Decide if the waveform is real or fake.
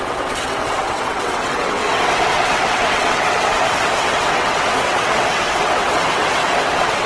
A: fake